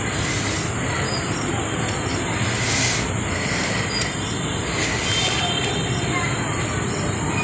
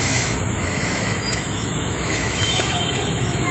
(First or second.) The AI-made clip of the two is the second